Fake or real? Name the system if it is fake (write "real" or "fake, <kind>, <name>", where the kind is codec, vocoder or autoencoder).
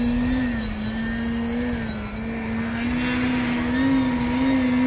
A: real